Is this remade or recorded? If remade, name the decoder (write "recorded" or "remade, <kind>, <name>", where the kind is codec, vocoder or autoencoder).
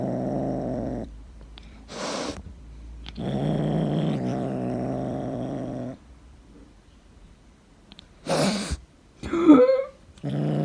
remade, vocoder, BigVGAN v2